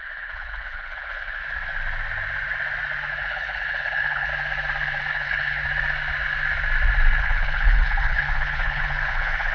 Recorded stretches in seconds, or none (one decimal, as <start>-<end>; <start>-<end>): 1.4-3.1; 4.3-5.1; 5.6-7.2